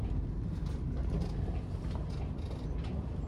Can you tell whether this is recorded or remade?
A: recorded